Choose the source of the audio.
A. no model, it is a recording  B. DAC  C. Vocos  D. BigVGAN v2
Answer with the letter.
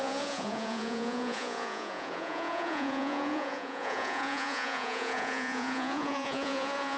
C